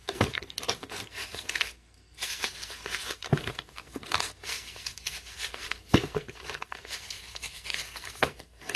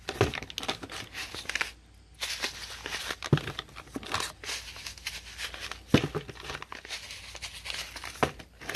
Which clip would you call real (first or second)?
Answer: second